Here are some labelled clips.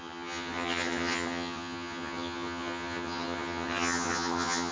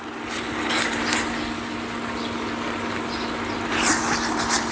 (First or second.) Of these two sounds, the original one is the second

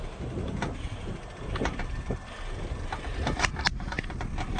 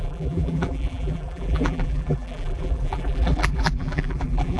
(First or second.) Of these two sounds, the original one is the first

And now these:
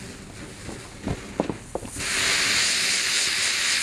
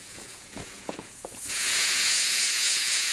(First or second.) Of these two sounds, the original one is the first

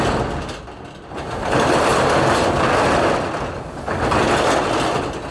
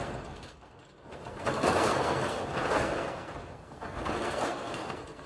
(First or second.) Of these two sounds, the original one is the first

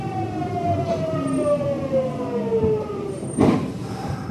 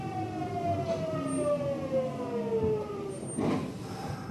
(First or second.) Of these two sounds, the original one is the second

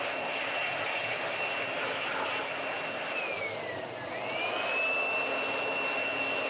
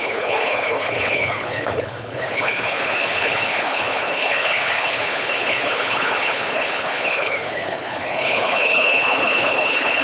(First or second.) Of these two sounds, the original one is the first